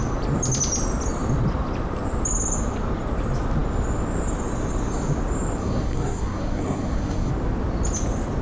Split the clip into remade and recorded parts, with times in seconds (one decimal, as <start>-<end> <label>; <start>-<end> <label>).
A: 0.0-5.6 recorded; 5.6-7.3 remade; 7.3-8.4 recorded